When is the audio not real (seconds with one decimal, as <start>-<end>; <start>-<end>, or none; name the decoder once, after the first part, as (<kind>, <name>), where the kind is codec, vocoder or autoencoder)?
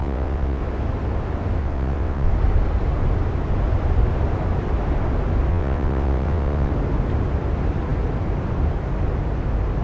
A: 0.0-0.6 (vocoder, WaveNeXt); 1.6-2.3; 5.5-6.7